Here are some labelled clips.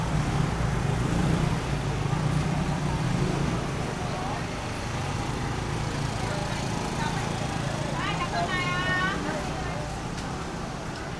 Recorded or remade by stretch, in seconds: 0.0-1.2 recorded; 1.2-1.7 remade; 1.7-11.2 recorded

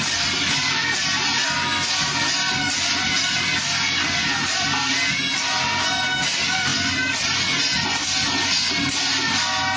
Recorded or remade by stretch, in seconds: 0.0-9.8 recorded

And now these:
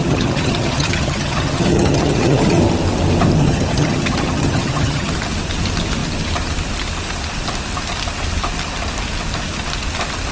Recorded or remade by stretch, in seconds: 0.0-2.6 remade; 2.6-3.4 recorded; 3.4-5.1 remade; 5.1-10.3 recorded

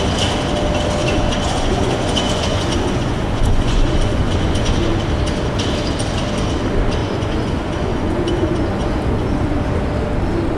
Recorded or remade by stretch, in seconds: 0.0-1.0 recorded; 1.0-5.0 remade; 5.0-7.0 recorded; 7.0-9.8 remade; 9.8-10.6 recorded

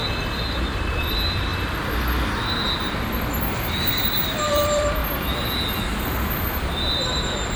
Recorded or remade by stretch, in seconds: 0.0-0.6 recorded; 0.6-1.5 remade; 1.5-3.4 recorded; 3.4-5.0 remade; 5.0-6.3 recorded; 6.3-7.6 remade

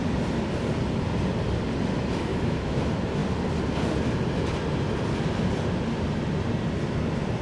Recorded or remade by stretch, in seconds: 0.0-2.3 recorded; 2.3-2.8 remade; 2.8-7.4 recorded

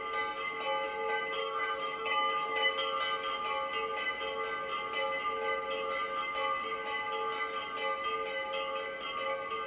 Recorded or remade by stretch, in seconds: 0.0-1.4 recorded; 1.4-2.7 remade; 2.7-9.7 recorded